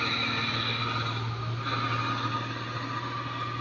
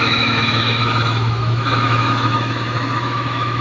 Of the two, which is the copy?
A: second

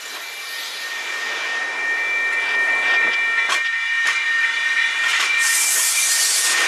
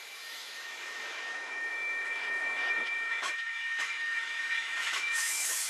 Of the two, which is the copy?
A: second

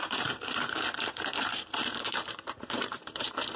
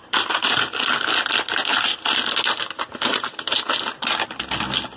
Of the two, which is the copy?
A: first